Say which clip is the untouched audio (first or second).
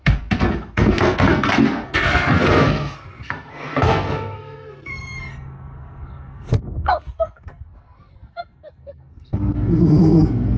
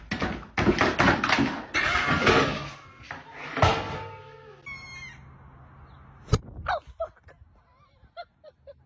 second